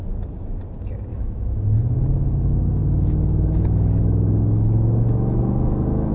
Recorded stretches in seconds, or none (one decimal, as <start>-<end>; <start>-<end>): 0.0-1.1; 1.8-2.8